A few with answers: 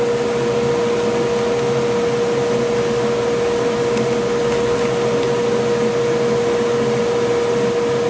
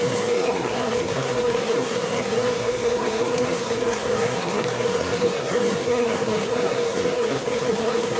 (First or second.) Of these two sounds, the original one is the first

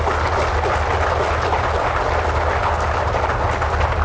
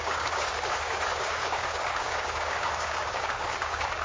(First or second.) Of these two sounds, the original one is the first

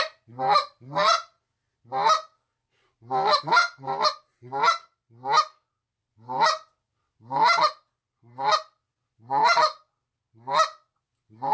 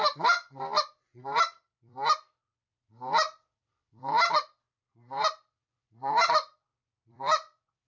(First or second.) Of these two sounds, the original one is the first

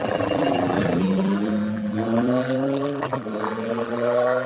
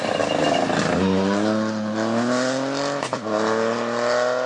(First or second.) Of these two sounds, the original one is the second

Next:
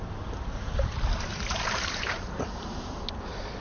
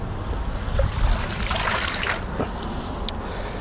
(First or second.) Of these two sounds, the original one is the second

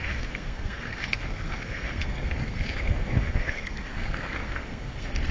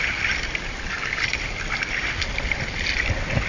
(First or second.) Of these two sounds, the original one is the second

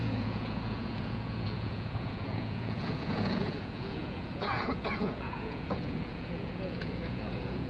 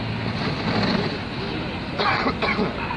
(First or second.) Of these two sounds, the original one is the second